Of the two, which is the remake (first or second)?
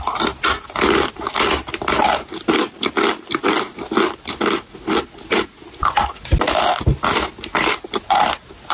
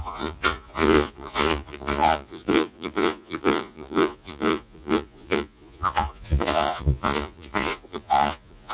second